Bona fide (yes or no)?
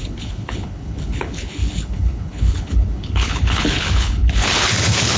no